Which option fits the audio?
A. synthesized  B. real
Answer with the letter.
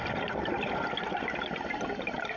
B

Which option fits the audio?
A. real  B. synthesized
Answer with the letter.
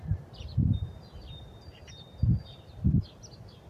A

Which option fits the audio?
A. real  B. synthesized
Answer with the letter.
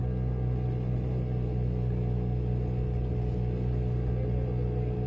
A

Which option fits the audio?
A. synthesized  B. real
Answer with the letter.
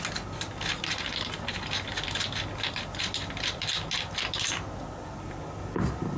B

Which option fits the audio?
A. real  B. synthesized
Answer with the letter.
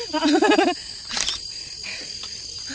A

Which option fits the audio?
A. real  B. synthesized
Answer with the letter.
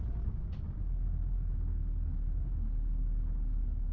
A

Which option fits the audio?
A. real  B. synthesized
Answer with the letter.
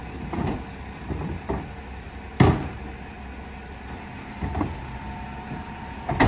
A